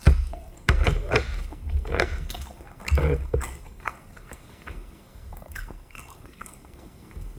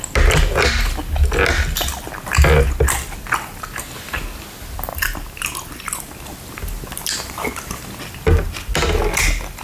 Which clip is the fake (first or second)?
first